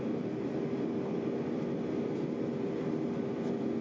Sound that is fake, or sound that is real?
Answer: real